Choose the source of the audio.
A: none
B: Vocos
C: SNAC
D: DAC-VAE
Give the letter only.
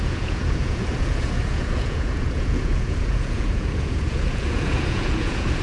B